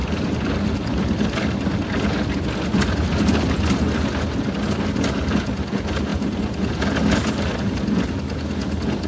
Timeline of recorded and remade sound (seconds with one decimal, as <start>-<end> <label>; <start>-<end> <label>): 0.0-9.1 recorded